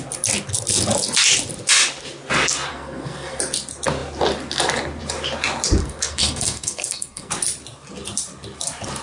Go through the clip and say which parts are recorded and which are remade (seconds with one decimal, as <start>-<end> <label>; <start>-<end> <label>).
0.0-2.7 recorded; 2.7-3.4 remade; 3.4-5.8 recorded; 5.8-7.3 remade; 7.3-9.0 recorded